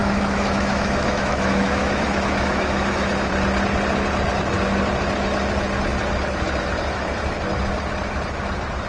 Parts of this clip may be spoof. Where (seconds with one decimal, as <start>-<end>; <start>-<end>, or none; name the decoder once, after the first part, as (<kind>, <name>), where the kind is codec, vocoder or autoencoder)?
0.0-3.3 (autoencoder, DAC-VAE)